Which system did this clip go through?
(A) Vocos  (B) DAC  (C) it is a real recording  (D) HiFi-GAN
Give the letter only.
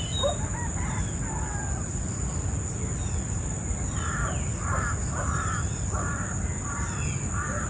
C